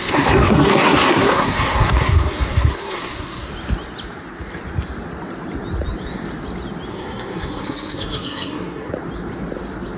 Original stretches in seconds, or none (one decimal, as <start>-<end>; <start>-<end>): 3.5-6.9; 8.9-10.0